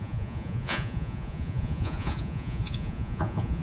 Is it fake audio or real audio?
fake